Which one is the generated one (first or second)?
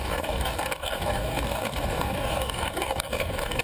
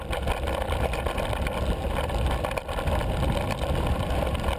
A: first